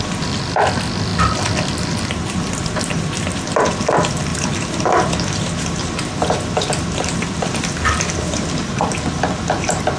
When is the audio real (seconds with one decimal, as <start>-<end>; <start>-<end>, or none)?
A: 0.0-1.1; 3.4-10.0